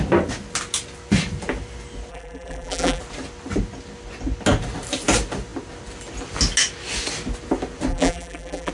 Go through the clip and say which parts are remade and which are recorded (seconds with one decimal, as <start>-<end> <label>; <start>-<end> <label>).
0.0-2.1 recorded; 2.1-3.0 remade; 3.0-7.9 recorded; 7.9-8.7 remade